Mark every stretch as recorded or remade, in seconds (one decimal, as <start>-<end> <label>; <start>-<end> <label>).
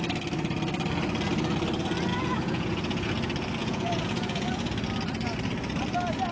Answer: 0.0-2.1 recorded; 2.1-3.1 remade; 3.1-3.6 recorded; 3.6-4.7 remade; 4.7-6.3 recorded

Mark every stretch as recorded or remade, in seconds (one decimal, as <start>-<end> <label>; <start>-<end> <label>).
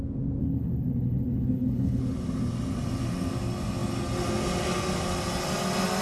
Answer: 0.0-0.4 recorded; 0.4-2.0 remade; 2.0-6.0 recorded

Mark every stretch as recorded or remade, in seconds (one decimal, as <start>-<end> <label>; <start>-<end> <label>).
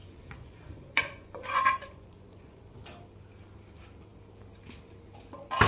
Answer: 0.0-2.6 remade; 2.6-5.7 recorded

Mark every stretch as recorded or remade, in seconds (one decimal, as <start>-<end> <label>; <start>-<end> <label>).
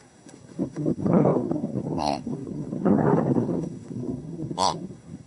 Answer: 0.0-5.3 remade